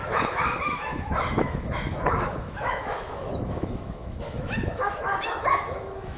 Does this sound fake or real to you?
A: fake